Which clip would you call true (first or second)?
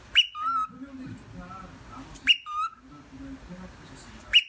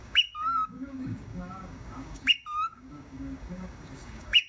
first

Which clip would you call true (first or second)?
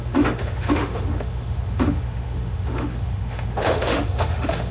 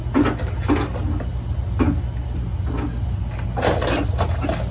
second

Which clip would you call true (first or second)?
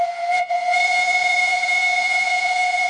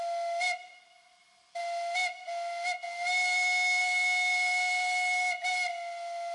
second